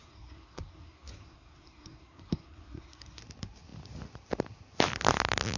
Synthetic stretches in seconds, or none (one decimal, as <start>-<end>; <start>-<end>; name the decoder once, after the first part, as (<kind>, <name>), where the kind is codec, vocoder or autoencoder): 0.0-3.2 (codec, SNAC)